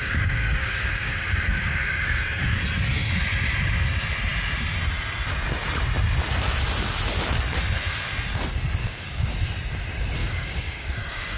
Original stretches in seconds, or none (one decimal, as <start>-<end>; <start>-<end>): 2.6-8.8; 9.4-10.2